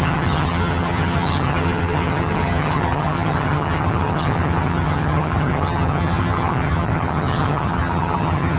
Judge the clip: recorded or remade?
remade